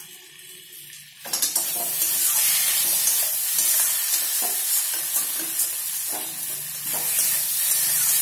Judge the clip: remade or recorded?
recorded